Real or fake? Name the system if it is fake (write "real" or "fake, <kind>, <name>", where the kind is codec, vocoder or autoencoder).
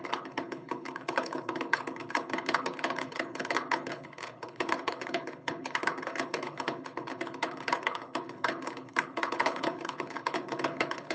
fake, codec, HILCodec